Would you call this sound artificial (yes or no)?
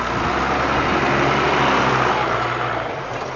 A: no